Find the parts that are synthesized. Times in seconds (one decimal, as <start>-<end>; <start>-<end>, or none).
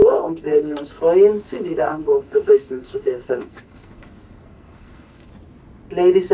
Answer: 0.0-1.0; 1.5-5.3